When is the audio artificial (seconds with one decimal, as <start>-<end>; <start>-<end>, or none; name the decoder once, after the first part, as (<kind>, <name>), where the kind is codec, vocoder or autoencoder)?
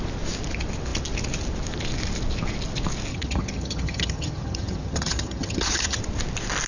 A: 3.1-6.0 (vocoder, HiFi-GAN)